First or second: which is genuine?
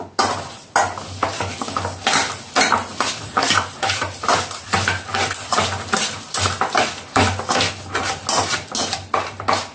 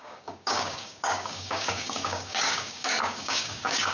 first